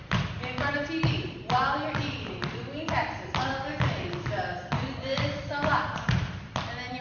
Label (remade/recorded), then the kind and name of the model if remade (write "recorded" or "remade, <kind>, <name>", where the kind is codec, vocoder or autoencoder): recorded